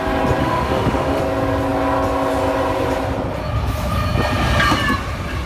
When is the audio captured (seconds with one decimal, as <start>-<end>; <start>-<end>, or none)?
0.0-0.4; 1.2-5.5